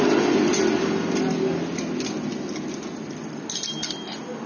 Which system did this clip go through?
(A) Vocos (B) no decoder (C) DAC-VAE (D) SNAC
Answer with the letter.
B